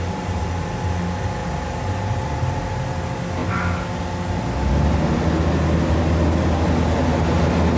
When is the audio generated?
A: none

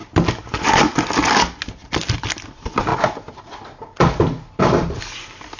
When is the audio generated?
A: 2.1-2.9 (vocoder, BigVGAN v2); 5.0-5.6